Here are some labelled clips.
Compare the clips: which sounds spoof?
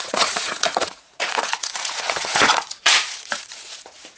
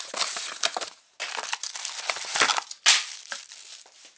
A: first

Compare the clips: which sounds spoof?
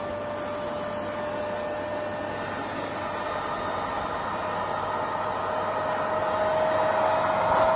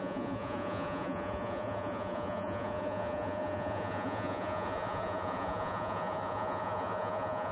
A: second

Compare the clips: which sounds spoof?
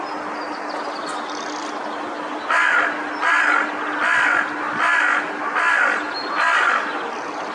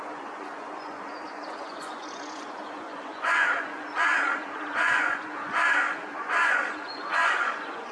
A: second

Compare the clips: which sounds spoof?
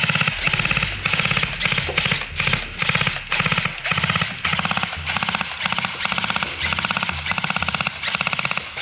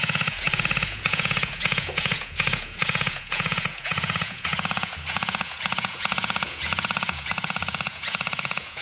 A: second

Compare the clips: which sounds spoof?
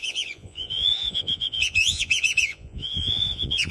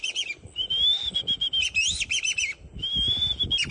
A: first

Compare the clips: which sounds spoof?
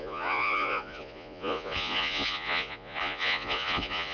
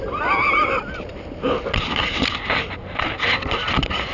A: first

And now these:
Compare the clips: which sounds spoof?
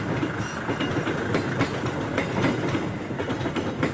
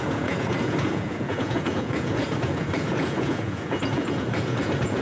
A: second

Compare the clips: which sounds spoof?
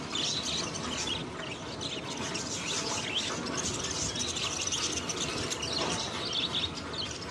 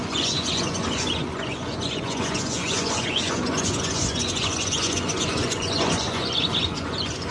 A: second